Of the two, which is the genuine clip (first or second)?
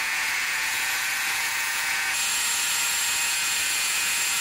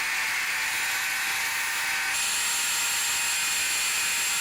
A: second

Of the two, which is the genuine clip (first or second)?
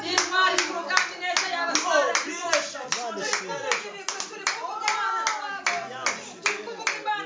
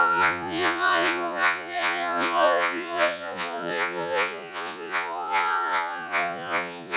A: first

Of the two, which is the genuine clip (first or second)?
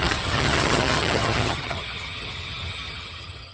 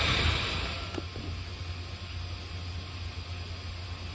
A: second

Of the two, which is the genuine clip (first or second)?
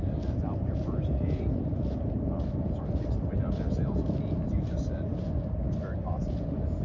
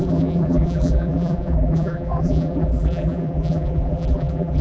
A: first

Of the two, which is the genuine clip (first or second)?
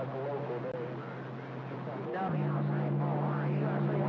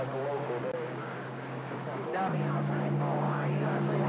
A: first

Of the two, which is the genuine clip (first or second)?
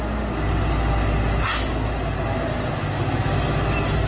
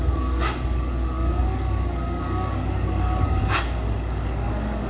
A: first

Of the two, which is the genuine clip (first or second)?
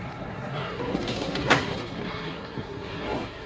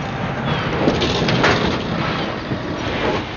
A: second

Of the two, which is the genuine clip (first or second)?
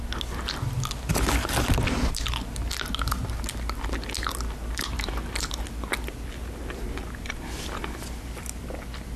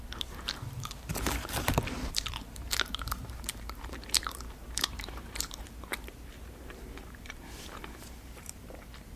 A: first